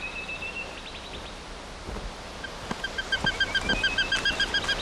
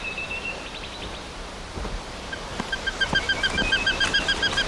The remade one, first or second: second